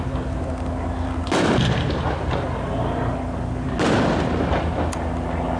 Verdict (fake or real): real